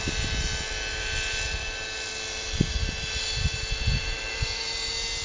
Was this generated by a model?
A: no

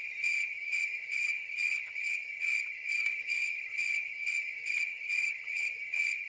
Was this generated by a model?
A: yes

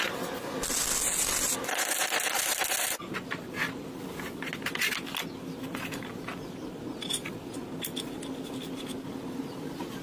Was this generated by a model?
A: no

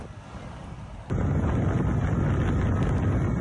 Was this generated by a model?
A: no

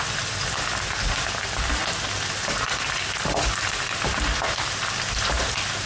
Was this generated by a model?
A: no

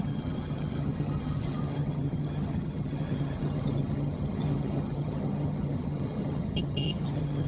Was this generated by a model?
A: yes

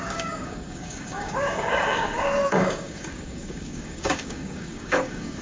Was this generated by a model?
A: yes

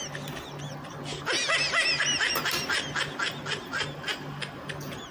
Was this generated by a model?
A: no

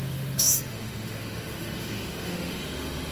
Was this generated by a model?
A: yes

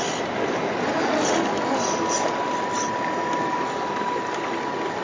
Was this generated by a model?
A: no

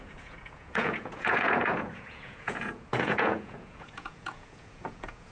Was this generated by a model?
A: yes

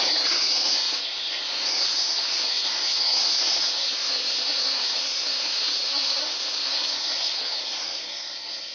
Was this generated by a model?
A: yes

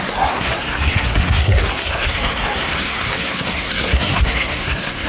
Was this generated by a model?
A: yes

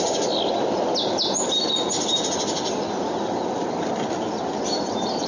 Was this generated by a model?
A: no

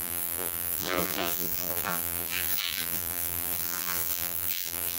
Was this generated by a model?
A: yes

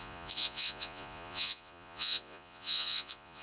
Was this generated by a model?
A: yes